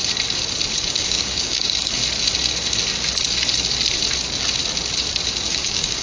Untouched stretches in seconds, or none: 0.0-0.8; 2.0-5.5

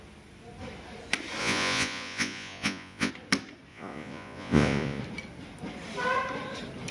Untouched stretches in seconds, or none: 0.0-1.4; 3.1-3.7; 5.0-6.9

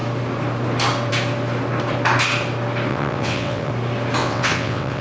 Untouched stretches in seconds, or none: 0.0-2.9; 3.7-4.2

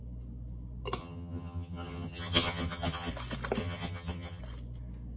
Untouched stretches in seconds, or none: 0.0-1.0; 3.1-3.6; 4.4-5.2